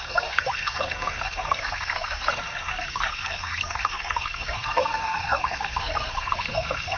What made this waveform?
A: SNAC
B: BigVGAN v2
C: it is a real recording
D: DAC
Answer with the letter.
A